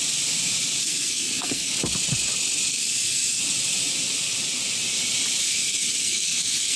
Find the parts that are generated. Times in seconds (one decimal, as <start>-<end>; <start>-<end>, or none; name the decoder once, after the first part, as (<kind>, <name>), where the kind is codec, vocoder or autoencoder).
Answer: 0.8-1.7 (codec, SNAC); 2.7-3.4; 5.4-6.8